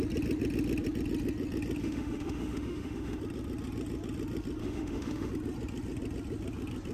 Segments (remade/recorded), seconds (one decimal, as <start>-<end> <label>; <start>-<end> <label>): 0.0-1.8 recorded; 1.8-3.2 remade; 3.2-4.6 recorded; 4.6-5.3 remade; 5.3-6.9 recorded